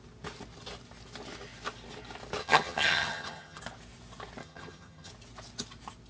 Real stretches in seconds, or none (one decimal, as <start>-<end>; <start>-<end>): 0.0-2.4; 3.6-4.4; 5.1-6.1